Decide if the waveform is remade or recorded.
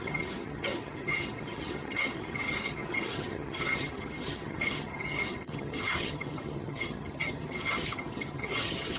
remade